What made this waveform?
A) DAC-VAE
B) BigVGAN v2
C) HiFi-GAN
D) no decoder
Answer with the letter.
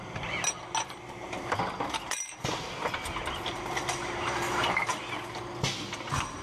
D